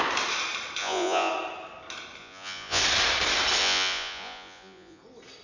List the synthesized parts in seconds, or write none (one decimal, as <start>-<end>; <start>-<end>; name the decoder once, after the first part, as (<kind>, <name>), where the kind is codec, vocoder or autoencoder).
0.8-1.3 (vocoder, Vocos); 2.2-2.8; 3.6-5.0